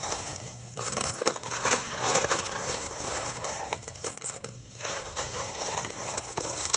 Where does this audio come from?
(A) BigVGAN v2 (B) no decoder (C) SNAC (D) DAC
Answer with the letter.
C